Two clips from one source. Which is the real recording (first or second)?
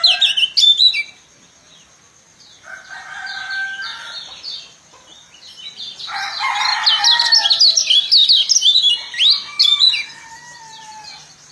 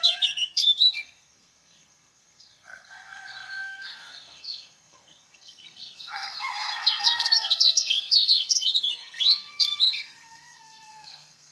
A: first